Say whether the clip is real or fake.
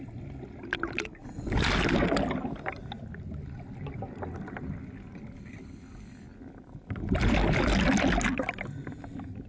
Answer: real